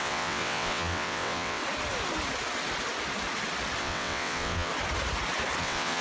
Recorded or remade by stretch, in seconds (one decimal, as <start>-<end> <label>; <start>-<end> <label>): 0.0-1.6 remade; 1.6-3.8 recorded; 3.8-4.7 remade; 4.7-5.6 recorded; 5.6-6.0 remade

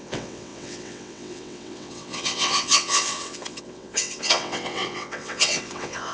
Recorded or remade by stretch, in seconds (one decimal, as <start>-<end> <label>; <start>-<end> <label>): 0.0-6.1 remade

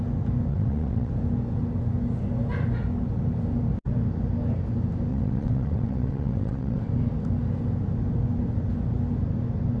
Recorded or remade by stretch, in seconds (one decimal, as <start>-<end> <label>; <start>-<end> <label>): 0.0-0.5 recorded; 0.5-1.1 remade; 1.1-5.1 recorded; 5.1-6.8 remade; 6.8-9.8 recorded

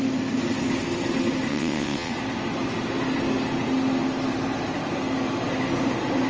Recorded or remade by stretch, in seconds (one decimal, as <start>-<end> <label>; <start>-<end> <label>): 0.0-1.5 recorded; 1.5-2.1 remade; 2.1-6.3 recorded

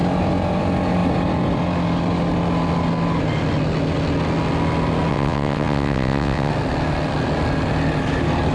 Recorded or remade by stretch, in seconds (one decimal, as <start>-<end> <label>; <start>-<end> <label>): 0.0-5.1 recorded; 5.1-6.5 remade; 6.5-8.5 recorded